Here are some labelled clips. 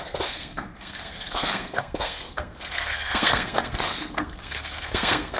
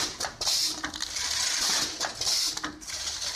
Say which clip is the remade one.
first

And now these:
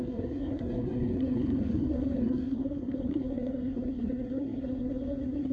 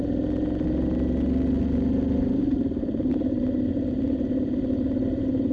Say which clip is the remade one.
first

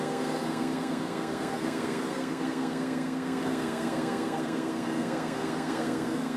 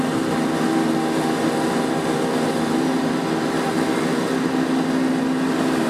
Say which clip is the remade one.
first